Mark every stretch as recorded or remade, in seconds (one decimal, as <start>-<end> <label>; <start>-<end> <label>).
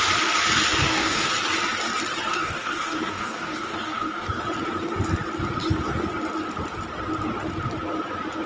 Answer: 0.0-0.8 recorded; 0.8-1.3 remade; 1.3-2.3 recorded; 2.3-4.4 remade; 4.4-8.5 recorded